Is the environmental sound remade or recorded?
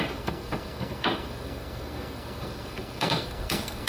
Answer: remade